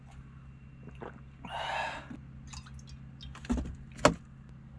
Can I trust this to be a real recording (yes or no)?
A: yes